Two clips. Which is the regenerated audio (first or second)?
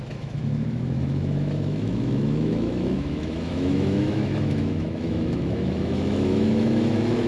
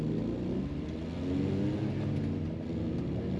first